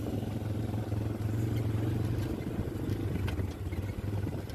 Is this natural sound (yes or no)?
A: yes